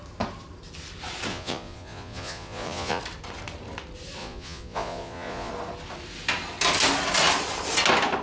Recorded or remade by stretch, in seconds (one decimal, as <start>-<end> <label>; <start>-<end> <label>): 0.0-1.3 recorded; 1.3-3.0 remade; 3.0-4.2 recorded; 4.2-5.5 remade; 5.5-8.2 recorded